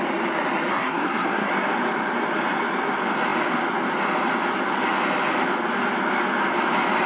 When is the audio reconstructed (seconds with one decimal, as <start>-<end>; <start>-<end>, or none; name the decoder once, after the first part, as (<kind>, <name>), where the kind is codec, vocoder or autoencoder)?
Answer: 0.7-1.5 (codec, SNAC)